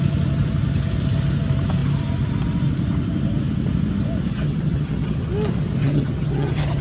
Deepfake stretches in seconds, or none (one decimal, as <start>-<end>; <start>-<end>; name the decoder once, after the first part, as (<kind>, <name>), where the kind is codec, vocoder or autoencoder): 4.3-5.3 (vocoder, HiFi-GAN); 5.8-6.8